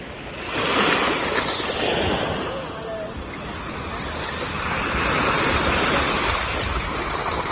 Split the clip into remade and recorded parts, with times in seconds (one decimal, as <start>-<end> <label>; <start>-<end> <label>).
0.0-5.6 recorded; 5.6-7.1 remade; 7.1-7.5 recorded